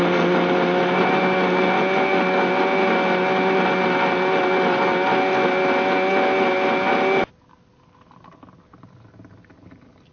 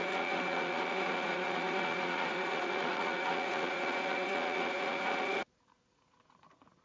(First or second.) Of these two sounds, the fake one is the second